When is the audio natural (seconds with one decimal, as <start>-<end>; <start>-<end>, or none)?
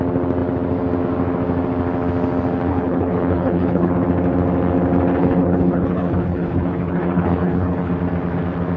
0.0-2.7; 3.9-5.2; 7.9-8.8